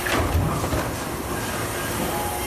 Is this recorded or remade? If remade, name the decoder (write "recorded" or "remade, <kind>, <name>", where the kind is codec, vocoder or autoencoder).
recorded